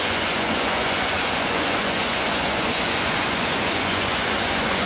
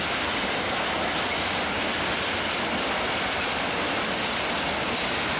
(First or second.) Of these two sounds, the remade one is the first